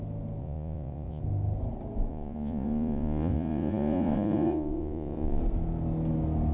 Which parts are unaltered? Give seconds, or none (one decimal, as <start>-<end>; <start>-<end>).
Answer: 0.0-0.4; 1.2-2.1; 5.4-6.5